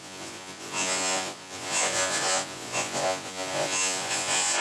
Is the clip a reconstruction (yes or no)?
yes